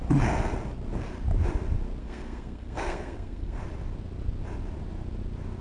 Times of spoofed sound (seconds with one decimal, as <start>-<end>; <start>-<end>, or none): 2.0-3.6